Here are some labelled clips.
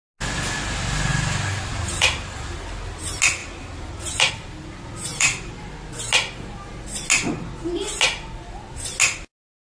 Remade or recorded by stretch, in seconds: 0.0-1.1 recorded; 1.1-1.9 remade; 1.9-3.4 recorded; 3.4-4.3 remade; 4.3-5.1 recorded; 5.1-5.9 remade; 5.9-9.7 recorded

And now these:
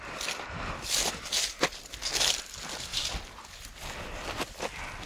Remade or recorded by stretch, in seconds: 0.0-5.1 recorded

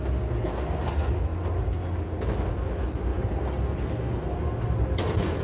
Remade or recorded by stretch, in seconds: 0.0-5.4 recorded

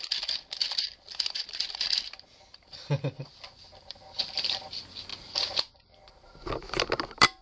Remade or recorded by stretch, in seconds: 0.0-7.4 recorded

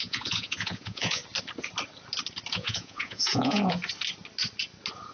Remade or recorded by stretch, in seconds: 0.0-1.2 remade; 1.2-2.5 recorded; 2.5-3.8 remade; 3.8-5.1 recorded

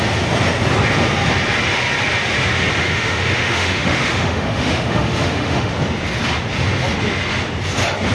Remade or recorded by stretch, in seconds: 0.0-2.8 recorded; 2.8-5.7 remade; 5.7-8.1 recorded